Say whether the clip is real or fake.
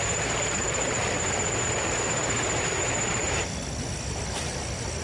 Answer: real